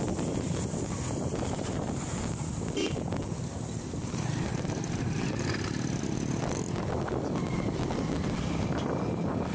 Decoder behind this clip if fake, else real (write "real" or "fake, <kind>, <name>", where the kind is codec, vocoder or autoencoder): real